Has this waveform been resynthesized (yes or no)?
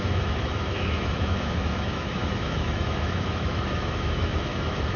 yes